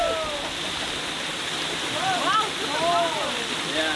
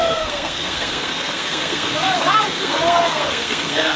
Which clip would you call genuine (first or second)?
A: first